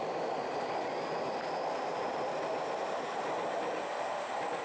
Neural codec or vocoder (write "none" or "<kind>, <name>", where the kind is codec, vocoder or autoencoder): none